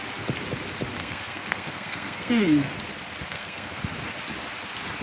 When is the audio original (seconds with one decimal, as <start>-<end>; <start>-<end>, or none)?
0.0-1.0; 2.7-3.2; 3.8-5.0